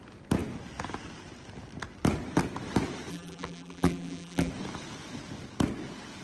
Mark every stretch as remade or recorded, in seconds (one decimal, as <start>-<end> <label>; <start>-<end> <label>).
0.0-3.1 recorded; 3.1-4.5 remade; 4.5-6.2 recorded